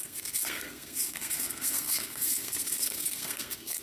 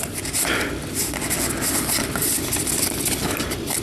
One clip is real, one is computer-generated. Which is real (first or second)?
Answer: second